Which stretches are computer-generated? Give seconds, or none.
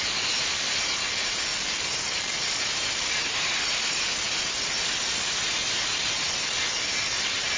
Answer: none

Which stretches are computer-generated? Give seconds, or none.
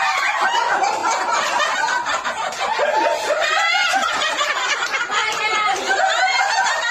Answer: 0.0-1.0; 2.7-6.9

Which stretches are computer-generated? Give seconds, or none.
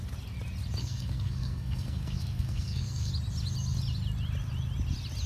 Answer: 0.8-3.1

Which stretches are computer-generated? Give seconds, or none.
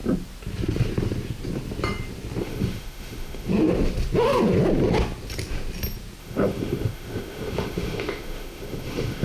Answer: 2.4-3.5; 6.2-9.2